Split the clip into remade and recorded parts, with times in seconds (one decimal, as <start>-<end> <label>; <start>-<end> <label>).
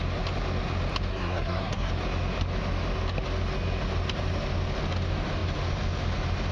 0.0-1.1 recorded; 1.1-1.9 remade; 1.9-6.5 recorded